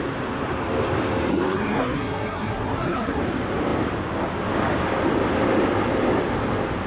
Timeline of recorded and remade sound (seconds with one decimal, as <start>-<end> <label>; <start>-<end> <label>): 0.0-1.3 recorded; 1.3-3.2 remade; 3.2-6.9 recorded